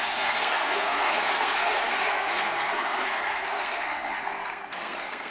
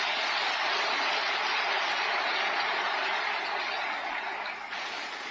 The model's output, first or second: first